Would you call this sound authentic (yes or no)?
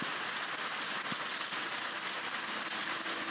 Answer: yes